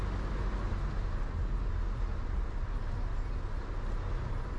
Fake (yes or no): no